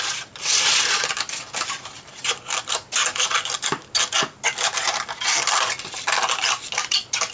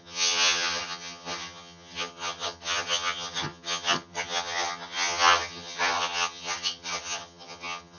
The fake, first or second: second